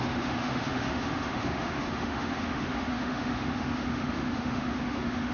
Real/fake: fake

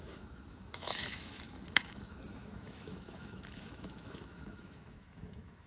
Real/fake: fake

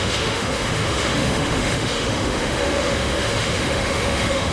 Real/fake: fake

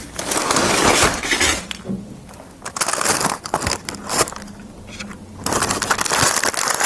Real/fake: real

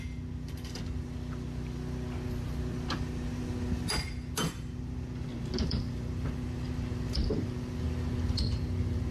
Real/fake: real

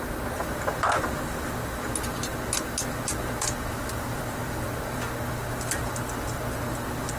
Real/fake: real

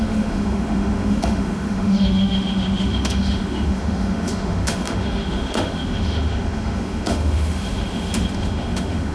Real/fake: fake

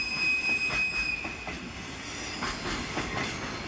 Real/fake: real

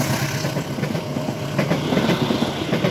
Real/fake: real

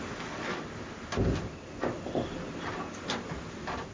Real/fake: real